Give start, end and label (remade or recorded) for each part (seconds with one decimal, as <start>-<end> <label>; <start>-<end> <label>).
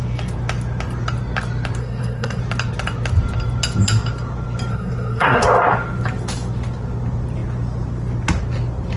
0.0-1.8 recorded; 1.8-2.4 remade; 2.4-4.7 recorded; 4.7-5.4 remade; 5.4-9.0 recorded